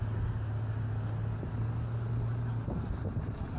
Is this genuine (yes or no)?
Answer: yes